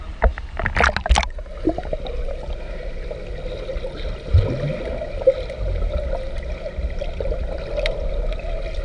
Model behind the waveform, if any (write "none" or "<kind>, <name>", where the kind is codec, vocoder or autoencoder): none